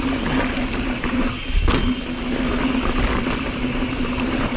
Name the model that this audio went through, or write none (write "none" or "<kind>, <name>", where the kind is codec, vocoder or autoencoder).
none